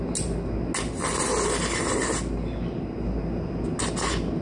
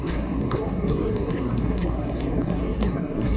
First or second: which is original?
first